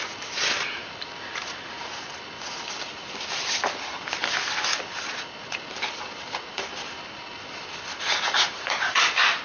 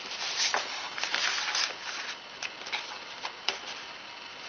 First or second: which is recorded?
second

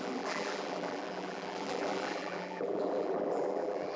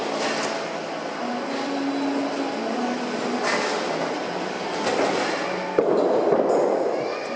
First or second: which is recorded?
second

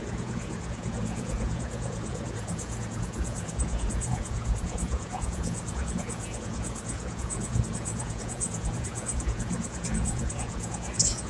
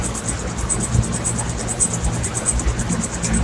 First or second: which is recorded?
second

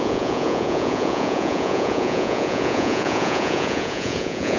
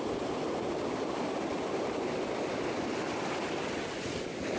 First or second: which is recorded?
second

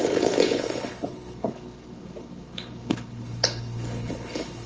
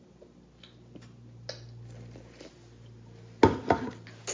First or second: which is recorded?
second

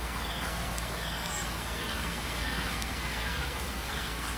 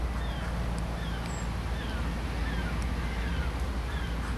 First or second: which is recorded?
second